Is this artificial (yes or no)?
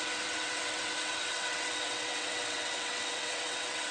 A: yes